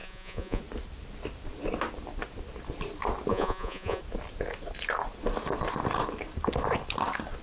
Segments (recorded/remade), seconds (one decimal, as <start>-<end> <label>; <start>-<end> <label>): 0.0-0.6 remade; 0.6-3.3 recorded; 3.3-4.0 remade; 4.0-7.4 recorded